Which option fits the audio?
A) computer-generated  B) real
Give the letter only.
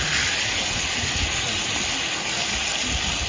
B